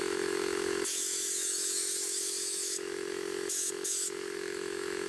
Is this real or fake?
fake